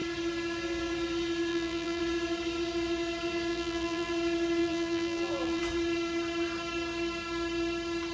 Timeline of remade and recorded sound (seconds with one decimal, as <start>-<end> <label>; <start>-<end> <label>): 0.0-1.5 recorded; 1.5-2.0 remade; 2.0-3.5 recorded; 3.5-4.1 remade; 4.1-4.6 recorded; 4.6-5.6 remade; 5.6-8.1 recorded